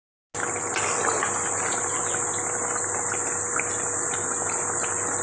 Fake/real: real